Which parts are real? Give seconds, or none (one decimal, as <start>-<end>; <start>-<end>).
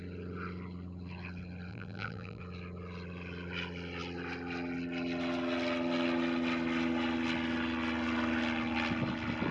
0.0-1.7; 2.4-9.5